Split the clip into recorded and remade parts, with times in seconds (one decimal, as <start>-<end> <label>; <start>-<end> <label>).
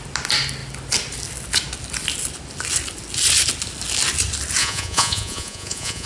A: 0.0-4.6 recorded; 4.6-6.1 remade